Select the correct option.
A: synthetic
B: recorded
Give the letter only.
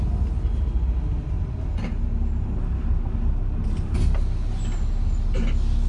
B